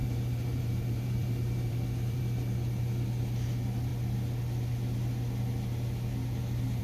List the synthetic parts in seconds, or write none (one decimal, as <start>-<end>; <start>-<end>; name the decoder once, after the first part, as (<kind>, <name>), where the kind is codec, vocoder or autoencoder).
0.0-2.2 (vocoder, BigVGAN v2)